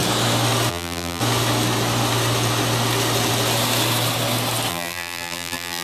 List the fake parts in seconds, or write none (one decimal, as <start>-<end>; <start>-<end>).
0.7-1.2; 4.7-5.8